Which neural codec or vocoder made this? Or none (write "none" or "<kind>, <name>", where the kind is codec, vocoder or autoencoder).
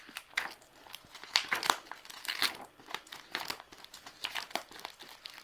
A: none